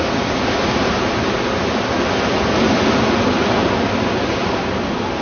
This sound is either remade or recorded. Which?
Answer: recorded